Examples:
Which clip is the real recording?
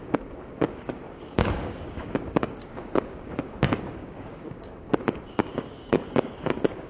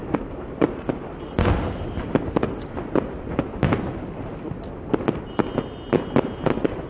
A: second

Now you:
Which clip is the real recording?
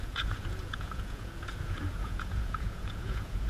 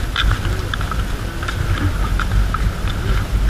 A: second